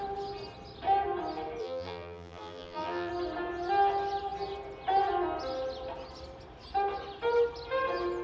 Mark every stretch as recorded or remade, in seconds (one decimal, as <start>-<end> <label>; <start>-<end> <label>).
0.0-1.6 recorded; 1.6-3.1 remade; 3.1-8.2 recorded